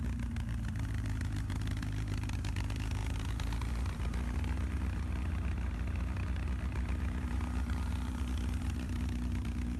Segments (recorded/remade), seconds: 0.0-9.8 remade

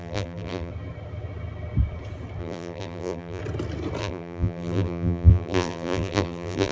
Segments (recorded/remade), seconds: 0.0-0.7 remade; 0.7-2.4 recorded; 2.4-3.4 remade; 3.4-4.0 recorded; 4.0-6.7 remade

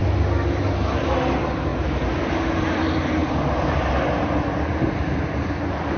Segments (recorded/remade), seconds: 0.0-1.0 recorded; 1.0-6.0 remade

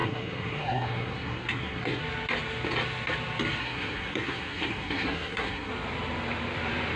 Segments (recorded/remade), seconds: 0.0-2.0 remade; 2.0-3.6 recorded; 3.6-5.7 remade; 5.7-7.0 recorded